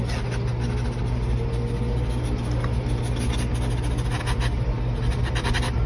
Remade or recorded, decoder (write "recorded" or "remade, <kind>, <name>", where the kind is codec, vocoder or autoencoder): recorded